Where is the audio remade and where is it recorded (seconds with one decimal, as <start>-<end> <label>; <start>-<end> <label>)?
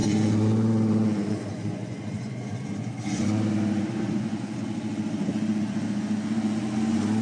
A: 0.0-3.2 remade; 3.2-4.1 recorded; 4.1-6.6 remade; 6.6-7.2 recorded